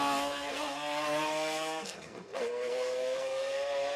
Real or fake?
fake